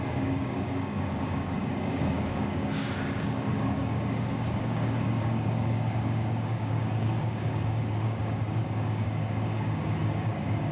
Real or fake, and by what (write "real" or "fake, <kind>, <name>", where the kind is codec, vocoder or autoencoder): fake, codec, DAC